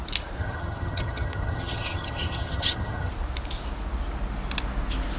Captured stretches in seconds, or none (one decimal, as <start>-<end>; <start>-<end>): 0.0-0.4; 3.1-5.2